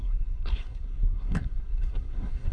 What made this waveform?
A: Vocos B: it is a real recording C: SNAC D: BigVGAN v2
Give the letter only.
C